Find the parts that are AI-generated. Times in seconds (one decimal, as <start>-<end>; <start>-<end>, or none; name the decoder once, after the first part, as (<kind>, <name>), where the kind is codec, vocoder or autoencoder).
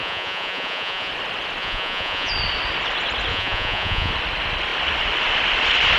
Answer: 0.0-1.1 (vocoder, Vocos); 1.6-2.3; 3.3-4.1